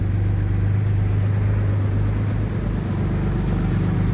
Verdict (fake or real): real